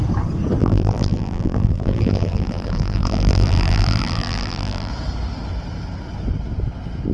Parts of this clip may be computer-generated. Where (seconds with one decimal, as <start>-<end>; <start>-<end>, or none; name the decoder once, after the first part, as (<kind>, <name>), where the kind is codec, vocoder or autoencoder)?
0.6-4.9 (vocoder, BigVGAN v2)